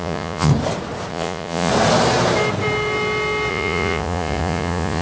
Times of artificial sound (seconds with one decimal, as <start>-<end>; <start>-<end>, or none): 0.0-0.5; 1.1-1.7; 3.5-5.0